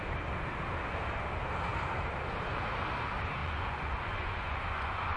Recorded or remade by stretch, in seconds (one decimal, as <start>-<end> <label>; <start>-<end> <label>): 0.0-3.4 recorded; 3.4-5.2 remade